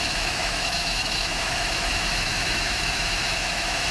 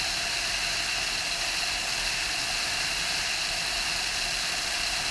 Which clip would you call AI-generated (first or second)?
first